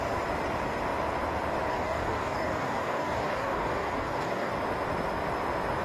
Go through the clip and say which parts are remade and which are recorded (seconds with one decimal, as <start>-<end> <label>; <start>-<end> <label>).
0.0-1.7 recorded; 1.7-4.5 remade; 4.5-5.8 recorded